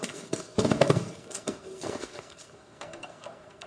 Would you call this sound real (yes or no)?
no